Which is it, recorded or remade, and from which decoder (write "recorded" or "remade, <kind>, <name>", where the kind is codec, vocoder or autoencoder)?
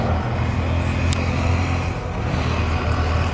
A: recorded